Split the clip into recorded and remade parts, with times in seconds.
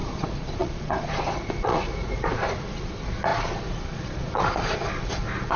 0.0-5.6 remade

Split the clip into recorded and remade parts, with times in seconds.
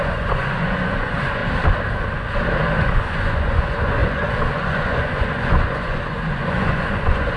0.0-1.4 remade; 1.4-2.8 recorded; 2.8-7.4 remade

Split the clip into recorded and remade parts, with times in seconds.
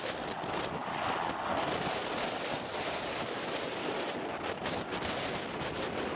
0.0-6.2 recorded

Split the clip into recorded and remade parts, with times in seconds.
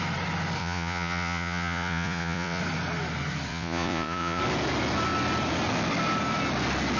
0.0-0.6 recorded; 0.6-2.6 remade; 2.6-3.5 recorded; 3.5-4.4 remade; 4.4-7.0 recorded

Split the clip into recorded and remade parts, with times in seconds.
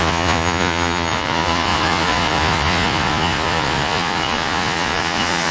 0.0-5.5 remade